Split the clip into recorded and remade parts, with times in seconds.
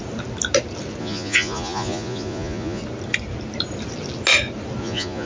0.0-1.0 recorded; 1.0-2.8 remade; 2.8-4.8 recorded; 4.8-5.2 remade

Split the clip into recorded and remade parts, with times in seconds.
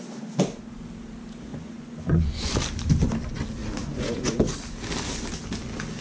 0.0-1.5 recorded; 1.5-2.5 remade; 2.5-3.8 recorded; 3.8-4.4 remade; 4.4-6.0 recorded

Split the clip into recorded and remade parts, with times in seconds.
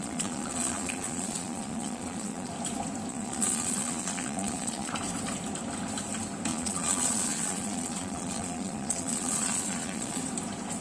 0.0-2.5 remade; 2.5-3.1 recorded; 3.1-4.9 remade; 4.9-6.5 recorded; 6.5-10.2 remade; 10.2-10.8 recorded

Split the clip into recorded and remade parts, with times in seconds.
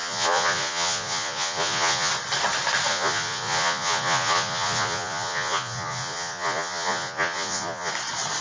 0.0-2.1 remade; 2.1-2.9 recorded; 2.9-7.9 remade; 7.9-8.4 recorded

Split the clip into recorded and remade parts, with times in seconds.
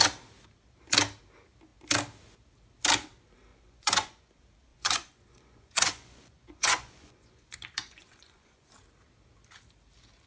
0.0-3.5 recorded; 3.5-4.3 remade; 4.3-4.7 recorded; 4.7-8.7 remade; 8.7-10.3 recorded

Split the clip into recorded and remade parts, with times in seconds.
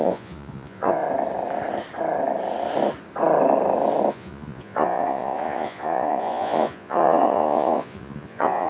0.0-1.0 remade; 1.0-4.1 recorded; 4.1-8.7 remade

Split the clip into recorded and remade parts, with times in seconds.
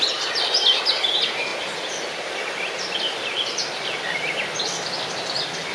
0.0-5.7 recorded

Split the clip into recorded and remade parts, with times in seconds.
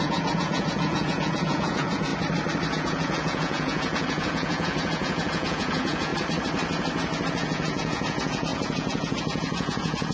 0.0-2.1 remade; 2.1-2.7 recorded; 2.7-6.1 remade; 6.1-7.3 recorded; 7.3-10.1 remade